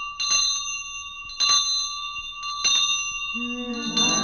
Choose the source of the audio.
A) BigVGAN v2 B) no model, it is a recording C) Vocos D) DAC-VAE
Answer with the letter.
B